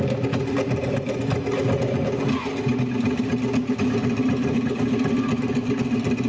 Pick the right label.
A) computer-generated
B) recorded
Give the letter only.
B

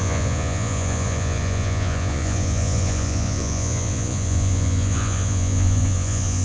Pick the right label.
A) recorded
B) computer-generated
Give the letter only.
B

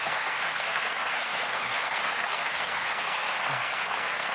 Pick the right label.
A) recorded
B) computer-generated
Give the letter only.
B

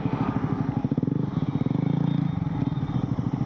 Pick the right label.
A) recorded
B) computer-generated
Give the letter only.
A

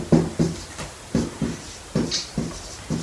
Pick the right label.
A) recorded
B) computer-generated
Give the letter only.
A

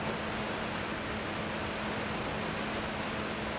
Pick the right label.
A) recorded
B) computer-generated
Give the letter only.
A